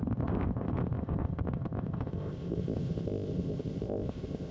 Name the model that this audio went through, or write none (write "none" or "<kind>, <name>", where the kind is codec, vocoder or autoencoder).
codec, ZipCodec